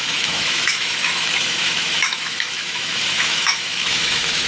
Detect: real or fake fake